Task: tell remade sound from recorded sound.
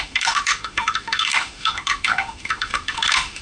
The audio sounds remade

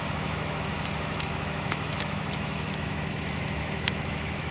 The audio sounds remade